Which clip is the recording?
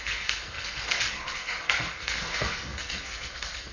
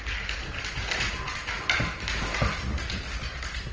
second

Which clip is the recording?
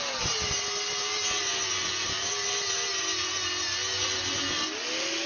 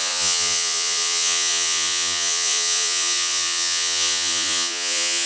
first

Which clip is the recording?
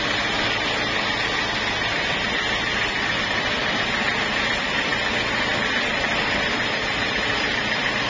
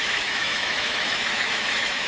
first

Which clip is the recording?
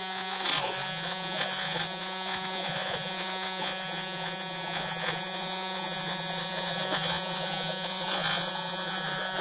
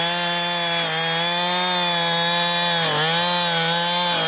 second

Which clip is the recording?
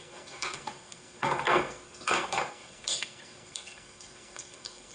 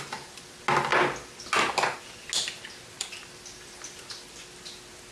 second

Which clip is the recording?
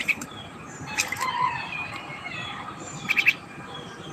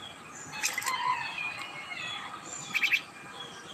second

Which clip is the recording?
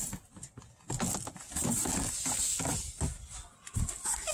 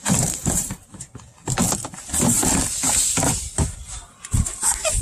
first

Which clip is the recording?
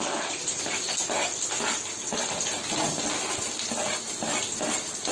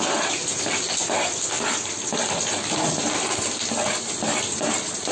first